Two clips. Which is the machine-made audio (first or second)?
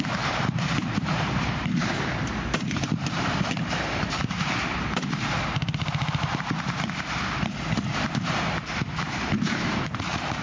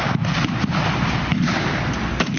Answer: first